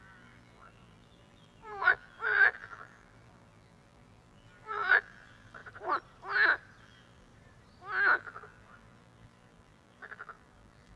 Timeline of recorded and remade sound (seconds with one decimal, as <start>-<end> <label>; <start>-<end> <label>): 0.0-5.6 remade; 5.6-6.8 recorded; 6.8-7.3 remade; 7.3-8.2 recorded; 8.2-11.0 remade